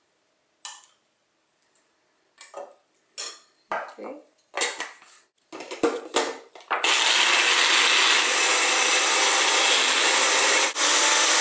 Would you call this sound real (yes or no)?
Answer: yes